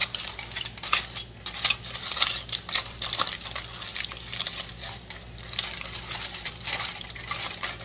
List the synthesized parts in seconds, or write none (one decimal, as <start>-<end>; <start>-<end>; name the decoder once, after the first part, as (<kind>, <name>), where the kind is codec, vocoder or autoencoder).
none